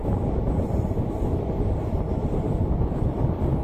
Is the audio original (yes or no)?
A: yes